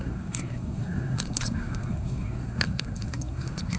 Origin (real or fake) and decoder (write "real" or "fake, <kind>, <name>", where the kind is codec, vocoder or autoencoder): fake, codec, SNAC